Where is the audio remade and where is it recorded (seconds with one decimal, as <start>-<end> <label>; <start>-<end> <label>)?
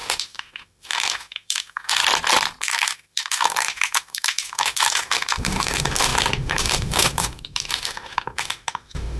0.0-2.0 remade; 2.0-2.6 recorded; 2.6-9.2 remade